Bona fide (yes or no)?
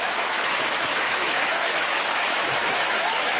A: no